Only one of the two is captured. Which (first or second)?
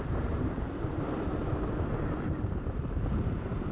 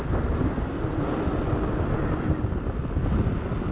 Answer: second